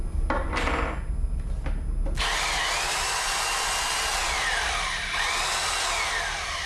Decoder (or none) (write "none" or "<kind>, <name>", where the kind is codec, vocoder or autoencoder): none